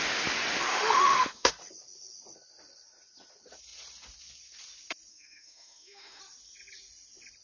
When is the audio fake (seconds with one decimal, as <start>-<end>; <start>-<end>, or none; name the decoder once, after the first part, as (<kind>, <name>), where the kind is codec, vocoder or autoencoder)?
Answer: 0.7-1.5 (autoencoder, DAC-VAE); 5.1-6.2